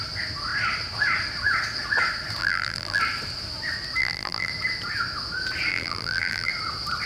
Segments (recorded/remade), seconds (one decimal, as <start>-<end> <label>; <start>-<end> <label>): 0.0-2.4 recorded; 2.4-3.0 remade; 3.0-4.0 recorded; 4.0-4.5 remade; 4.5-5.7 recorded; 5.7-6.5 remade; 6.5-7.1 recorded